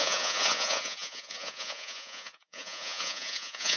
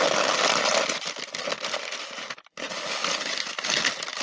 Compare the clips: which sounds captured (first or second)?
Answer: second